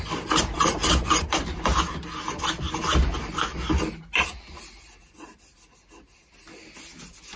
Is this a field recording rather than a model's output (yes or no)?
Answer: yes